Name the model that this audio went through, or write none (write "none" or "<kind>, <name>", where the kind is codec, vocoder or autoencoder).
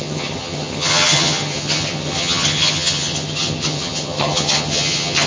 vocoder, HiFi-GAN